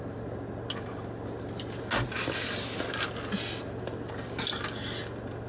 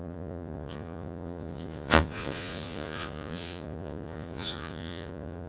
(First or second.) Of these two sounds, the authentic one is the first